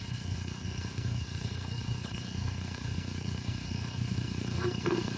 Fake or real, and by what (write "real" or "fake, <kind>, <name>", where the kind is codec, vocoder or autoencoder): fake, codec, SNAC